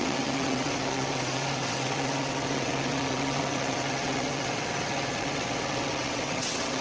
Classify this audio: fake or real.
fake